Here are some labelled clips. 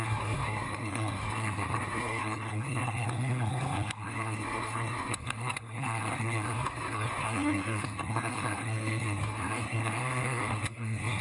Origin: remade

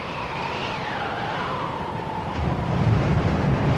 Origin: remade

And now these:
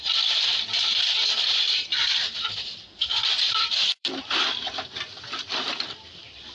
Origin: remade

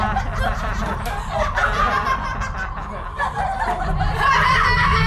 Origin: recorded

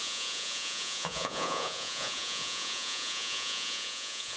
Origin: remade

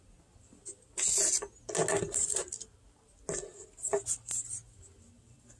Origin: recorded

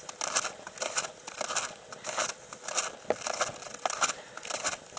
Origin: recorded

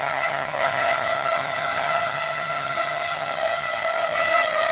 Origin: remade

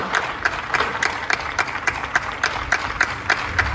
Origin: recorded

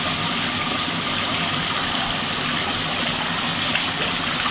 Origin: recorded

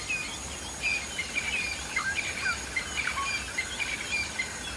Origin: recorded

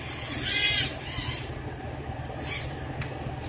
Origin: recorded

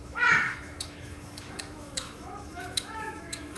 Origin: remade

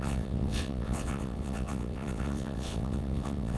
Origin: remade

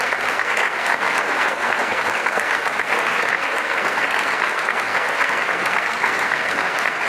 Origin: remade